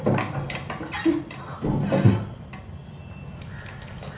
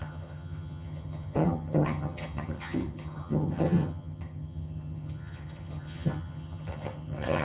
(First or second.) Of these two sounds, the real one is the first